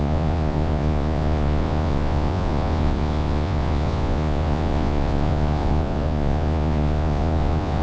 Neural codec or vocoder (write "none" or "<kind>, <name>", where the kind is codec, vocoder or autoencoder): vocoder, Vocos